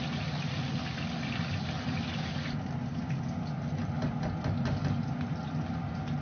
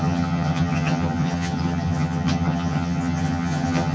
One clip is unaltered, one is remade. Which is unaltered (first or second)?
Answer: first